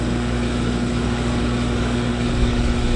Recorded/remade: remade